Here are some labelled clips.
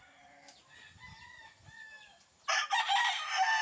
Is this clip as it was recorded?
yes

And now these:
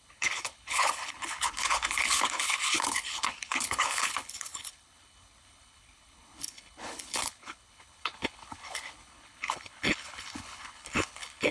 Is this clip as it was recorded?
no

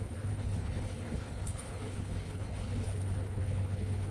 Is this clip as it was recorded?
no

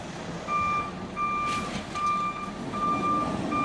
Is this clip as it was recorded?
yes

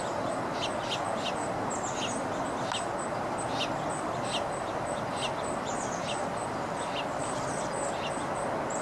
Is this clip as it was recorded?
yes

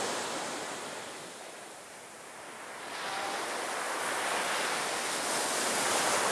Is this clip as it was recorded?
yes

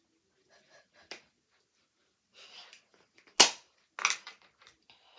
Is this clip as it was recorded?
yes